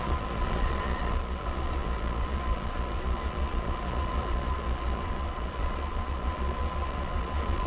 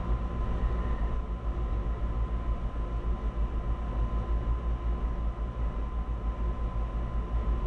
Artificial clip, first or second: first